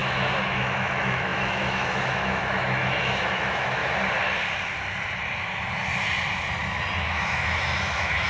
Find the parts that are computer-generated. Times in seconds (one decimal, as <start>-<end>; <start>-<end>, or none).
0.0-3.8; 7.0-8.3

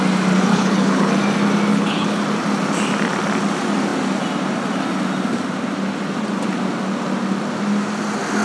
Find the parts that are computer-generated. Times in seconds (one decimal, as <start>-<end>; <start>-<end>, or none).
0.5-1.1; 1.7-2.2